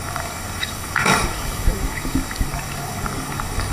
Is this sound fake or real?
fake